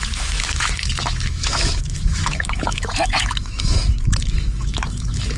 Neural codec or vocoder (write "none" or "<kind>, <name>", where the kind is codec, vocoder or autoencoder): autoencoder, DAC-VAE